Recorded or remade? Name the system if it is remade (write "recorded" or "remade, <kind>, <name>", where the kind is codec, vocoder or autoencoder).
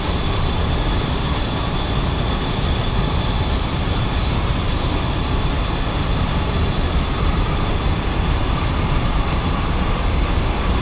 remade, vocoder, BigVGAN v2